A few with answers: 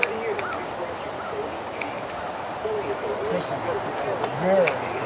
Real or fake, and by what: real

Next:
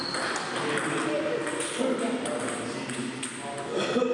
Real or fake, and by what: real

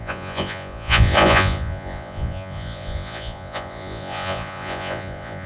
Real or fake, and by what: fake, vocoder, Vocos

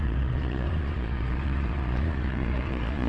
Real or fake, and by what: fake, vocoder, Vocos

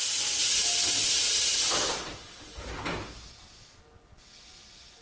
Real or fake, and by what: real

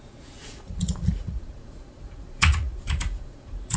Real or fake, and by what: fake, vocoder, Vocos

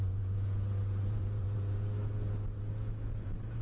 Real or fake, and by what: fake, vocoder, Vocos